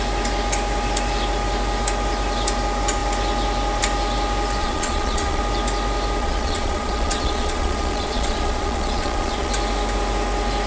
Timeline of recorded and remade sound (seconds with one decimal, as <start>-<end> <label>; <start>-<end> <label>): 0.0-4.6 recorded; 4.6-5.4 remade; 5.4-6.2 recorded; 6.2-9.5 remade; 9.5-10.7 recorded